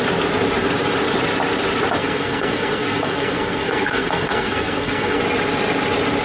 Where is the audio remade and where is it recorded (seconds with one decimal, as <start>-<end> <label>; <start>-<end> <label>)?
0.0-2.0 recorded; 2.0-5.2 remade; 5.2-6.2 recorded

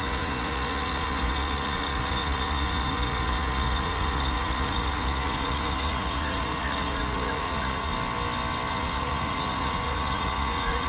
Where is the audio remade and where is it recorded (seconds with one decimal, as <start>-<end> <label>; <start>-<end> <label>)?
0.0-7.9 remade; 7.9-8.7 recorded; 8.7-10.9 remade

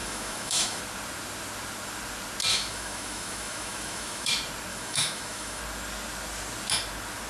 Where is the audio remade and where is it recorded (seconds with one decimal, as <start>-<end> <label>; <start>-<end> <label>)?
0.0-0.8 remade; 0.8-2.5 recorded; 2.5-4.3 remade; 4.3-4.7 recorded; 4.7-5.6 remade; 5.6-7.3 recorded